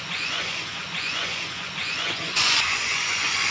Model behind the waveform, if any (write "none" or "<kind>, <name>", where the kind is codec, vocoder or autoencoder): vocoder, Vocos